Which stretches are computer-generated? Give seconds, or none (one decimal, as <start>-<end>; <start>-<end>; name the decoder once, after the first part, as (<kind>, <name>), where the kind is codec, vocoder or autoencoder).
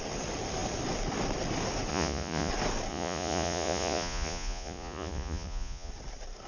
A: 1.9-2.5 (vocoder, Vocos); 2.9-5.9